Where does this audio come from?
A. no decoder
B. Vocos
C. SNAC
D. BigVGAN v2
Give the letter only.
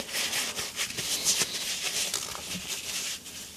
A